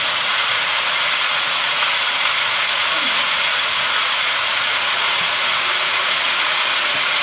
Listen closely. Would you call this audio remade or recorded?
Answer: remade